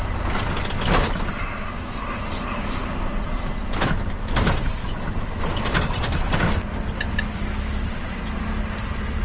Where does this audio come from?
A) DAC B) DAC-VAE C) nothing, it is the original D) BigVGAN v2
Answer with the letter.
C